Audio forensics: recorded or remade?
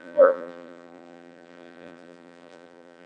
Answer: remade